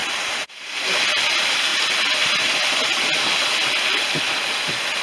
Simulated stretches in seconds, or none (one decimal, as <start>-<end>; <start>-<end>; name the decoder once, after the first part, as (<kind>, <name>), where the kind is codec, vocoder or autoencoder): none